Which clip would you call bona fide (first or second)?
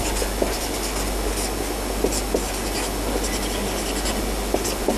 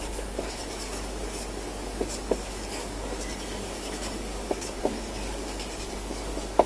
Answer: first